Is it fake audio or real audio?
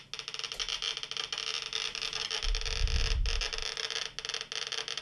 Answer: real